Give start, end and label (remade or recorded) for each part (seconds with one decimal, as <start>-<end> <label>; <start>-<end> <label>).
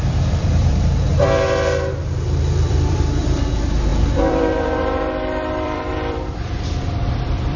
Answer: 0.0-1.1 remade; 1.1-1.9 recorded; 1.9-7.6 remade